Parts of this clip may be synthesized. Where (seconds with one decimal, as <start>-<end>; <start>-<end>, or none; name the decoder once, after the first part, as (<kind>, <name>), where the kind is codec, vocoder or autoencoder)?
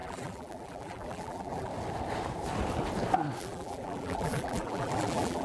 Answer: 0.0-1.7 (vocoder, BigVGAN v2); 3.4-5.4